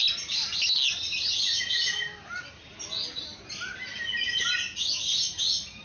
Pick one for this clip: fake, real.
real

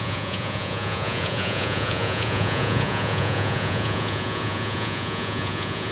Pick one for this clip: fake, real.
fake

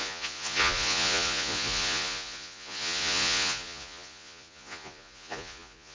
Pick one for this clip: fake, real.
fake